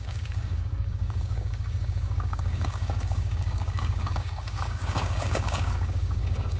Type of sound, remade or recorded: remade